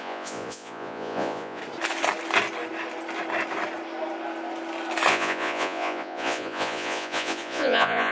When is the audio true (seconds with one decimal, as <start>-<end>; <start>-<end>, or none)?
1.6-5.1